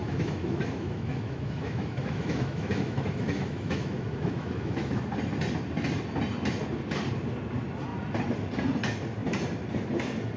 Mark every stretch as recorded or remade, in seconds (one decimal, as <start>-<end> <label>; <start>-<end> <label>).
0.0-5.0 remade; 5.0-10.4 recorded